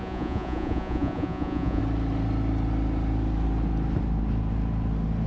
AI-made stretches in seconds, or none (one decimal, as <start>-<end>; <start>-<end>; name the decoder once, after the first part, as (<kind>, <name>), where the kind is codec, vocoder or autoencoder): 0.0-1.8 (vocoder, Vocos)